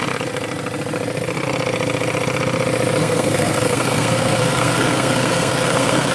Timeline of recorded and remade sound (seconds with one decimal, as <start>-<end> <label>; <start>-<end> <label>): 0.0-3.0 recorded; 3.0-6.1 remade